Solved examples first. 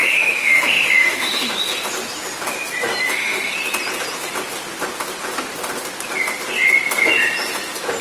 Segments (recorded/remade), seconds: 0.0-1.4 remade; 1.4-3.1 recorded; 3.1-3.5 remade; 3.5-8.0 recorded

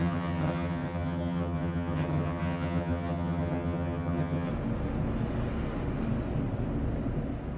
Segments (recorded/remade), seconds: 0.0-4.5 remade; 4.5-7.6 recorded

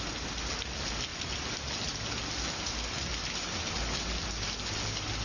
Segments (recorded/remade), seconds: 0.0-5.2 recorded

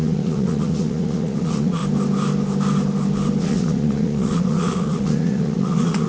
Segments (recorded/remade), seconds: 0.0-1.8 remade; 1.8-3.4 recorded; 3.4-6.1 remade

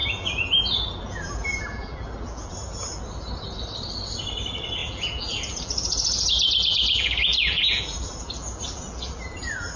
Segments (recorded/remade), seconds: 0.0-3.0 remade; 3.0-4.8 recorded; 4.8-9.8 remade

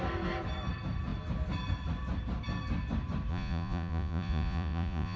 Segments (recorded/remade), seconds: 0.0-3.3 recorded; 3.3-5.2 remade

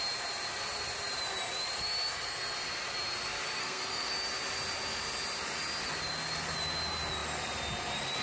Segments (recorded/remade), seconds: 0.0-3.6 recorded; 3.6-4.1 remade; 4.1-8.2 recorded